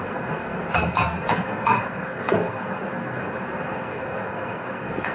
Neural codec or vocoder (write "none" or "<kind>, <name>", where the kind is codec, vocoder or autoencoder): codec, SNAC